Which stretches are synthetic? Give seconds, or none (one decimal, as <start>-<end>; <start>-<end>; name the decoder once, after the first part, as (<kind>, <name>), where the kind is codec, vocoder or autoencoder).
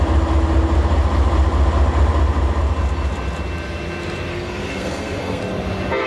4.3-5.4 (codec, SNAC)